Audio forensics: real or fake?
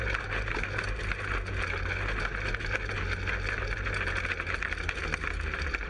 real